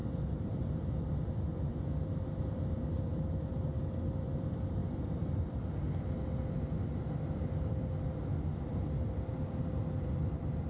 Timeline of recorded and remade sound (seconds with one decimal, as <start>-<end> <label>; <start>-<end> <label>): 0.0-10.7 recorded